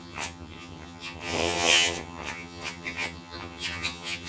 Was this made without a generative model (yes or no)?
no